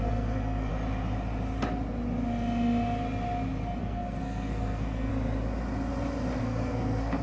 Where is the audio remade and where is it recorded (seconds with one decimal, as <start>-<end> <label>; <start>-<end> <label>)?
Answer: 0.0-0.7 remade; 0.7-3.8 recorded; 3.8-5.1 remade; 5.1-6.4 recorded; 6.4-7.2 remade